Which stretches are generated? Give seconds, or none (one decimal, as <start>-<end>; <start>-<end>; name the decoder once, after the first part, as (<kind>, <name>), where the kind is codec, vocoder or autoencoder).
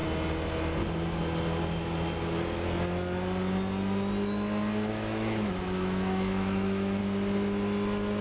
4.9-7.0 (autoencoder, DAC-VAE)